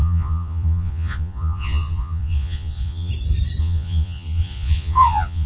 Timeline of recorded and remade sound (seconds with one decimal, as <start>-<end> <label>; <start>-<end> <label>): 0.0-3.1 remade; 3.1-3.6 recorded; 3.6-5.5 remade